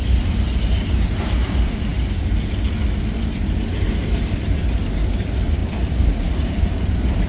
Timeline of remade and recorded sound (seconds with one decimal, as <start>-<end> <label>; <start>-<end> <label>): 0.0-1.9 remade; 1.9-3.7 recorded; 3.7-7.3 remade

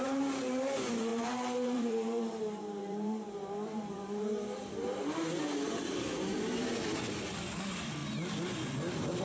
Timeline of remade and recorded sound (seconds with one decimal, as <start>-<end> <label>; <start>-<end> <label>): 0.0-8.0 remade; 8.0-9.2 recorded

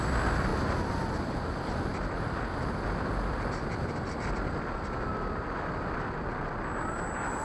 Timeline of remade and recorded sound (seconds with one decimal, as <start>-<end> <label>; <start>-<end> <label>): 0.0-7.4 recorded

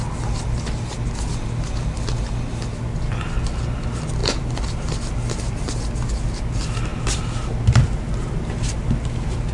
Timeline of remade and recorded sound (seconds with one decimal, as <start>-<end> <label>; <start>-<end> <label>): 0.0-4.2 recorded; 4.2-4.8 remade; 4.8-9.5 recorded

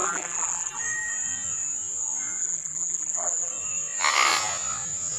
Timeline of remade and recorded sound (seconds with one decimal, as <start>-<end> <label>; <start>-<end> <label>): 0.0-0.8 remade; 0.8-2.4 recorded; 2.4-3.5 remade; 3.5-5.2 recorded

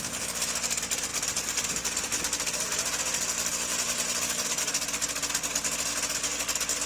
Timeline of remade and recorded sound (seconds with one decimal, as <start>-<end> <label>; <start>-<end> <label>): 0.0-1.1 recorded; 1.1-4.6 remade; 4.6-6.9 recorded

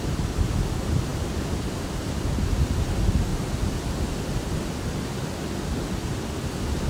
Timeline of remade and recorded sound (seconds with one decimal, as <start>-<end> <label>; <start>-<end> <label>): 0.0-6.9 recorded